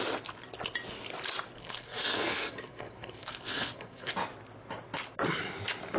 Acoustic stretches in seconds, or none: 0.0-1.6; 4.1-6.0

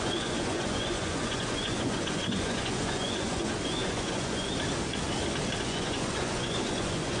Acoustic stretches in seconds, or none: 4.5-5.6

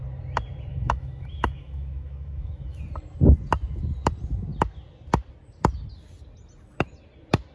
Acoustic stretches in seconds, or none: 0.0-0.7; 2.8-7.5

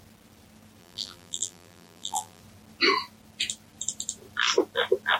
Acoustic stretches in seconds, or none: 0.0-0.8; 2.4-5.2

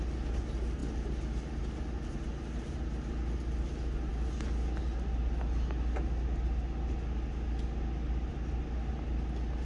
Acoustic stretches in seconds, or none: 0.0-9.7

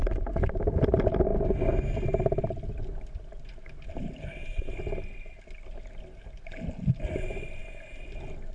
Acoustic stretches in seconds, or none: 0.0-8.5

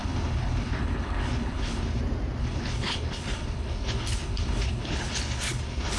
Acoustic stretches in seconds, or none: 2.0-2.4

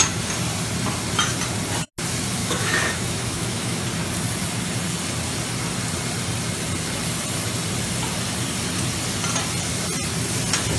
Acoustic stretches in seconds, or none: 0.0-2.4; 3.8-10.8